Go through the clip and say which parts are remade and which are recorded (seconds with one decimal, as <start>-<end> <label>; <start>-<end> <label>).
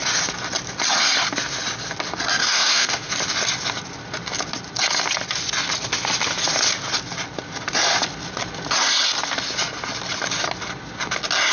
0.0-2.4 recorded; 2.4-3.1 remade; 3.1-11.5 recorded